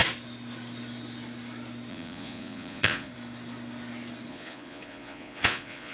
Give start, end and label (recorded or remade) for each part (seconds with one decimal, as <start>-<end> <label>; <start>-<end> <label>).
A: 0.0-1.9 recorded; 1.9-3.1 remade; 3.1-4.3 recorded; 4.3-5.9 remade